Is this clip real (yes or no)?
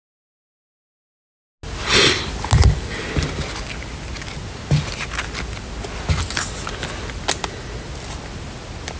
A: yes